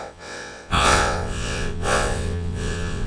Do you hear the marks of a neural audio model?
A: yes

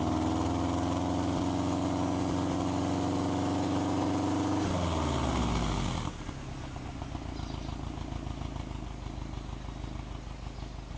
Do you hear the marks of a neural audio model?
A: no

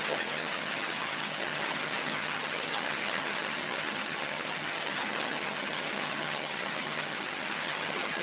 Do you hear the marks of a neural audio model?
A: yes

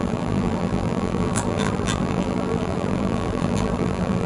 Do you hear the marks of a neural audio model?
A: yes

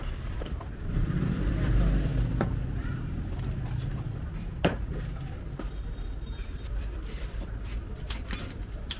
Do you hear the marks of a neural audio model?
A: yes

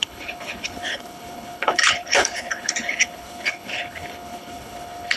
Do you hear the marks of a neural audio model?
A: yes